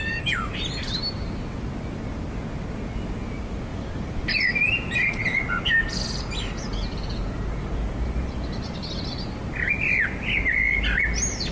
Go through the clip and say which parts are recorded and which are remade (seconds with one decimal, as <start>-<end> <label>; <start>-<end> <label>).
0.0-3.7 recorded; 3.7-4.5 remade; 4.5-11.5 recorded